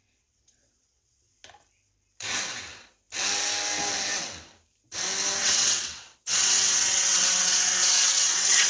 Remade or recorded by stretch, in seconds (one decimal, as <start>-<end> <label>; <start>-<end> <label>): 0.0-1.3 remade; 1.3-5.4 recorded; 5.4-8.7 remade

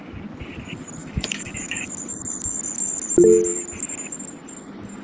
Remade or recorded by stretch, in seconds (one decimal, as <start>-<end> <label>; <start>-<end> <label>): 0.0-1.0 recorded; 1.0-1.9 remade; 1.9-5.0 recorded

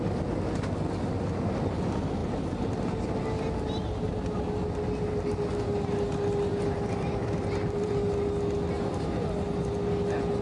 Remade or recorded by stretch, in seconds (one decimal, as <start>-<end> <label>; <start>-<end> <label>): 0.0-2.2 recorded; 2.2-4.4 remade; 4.4-6.5 recorded; 6.5-7.9 remade; 7.9-10.4 recorded

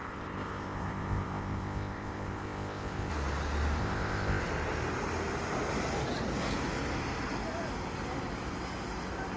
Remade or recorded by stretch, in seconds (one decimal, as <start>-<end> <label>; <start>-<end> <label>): 0.0-3.1 remade; 3.1-3.8 recorded; 3.8-4.4 remade; 4.4-9.4 recorded

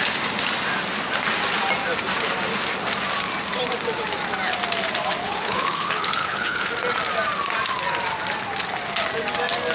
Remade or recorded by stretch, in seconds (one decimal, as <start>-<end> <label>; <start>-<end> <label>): 0.0-5.2 recorded; 5.2-6.7 remade; 6.7-9.7 recorded